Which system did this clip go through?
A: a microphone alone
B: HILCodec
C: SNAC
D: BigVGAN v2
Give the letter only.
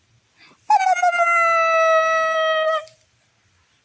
A